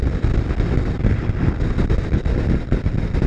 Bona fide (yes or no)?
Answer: yes